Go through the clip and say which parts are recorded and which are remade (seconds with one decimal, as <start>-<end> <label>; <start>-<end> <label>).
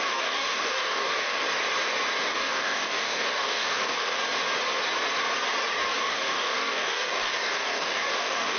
0.0-1.4 remade; 1.4-2.2 recorded; 2.2-4.2 remade; 4.2-6.0 recorded; 6.0-8.6 remade